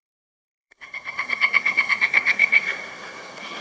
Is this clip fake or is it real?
fake